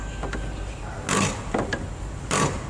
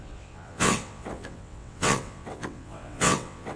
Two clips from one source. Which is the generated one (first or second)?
second